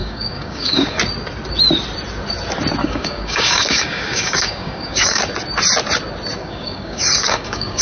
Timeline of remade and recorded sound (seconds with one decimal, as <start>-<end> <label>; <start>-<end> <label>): 0.0-1.0 remade; 1.0-2.8 recorded; 2.8-5.2 remade; 5.2-6.4 recorded; 6.4-7.8 remade